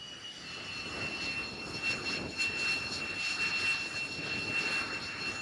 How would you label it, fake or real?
real